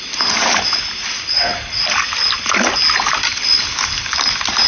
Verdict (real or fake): real